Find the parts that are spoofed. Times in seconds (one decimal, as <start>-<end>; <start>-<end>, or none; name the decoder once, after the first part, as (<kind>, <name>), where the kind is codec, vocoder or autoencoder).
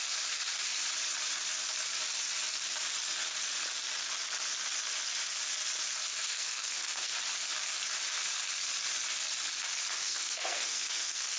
6.2-7.1 (codec, SNAC); 10.0-11.4